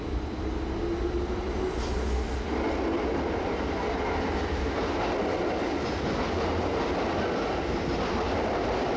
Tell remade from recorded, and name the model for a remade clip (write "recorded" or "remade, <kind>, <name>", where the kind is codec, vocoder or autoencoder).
recorded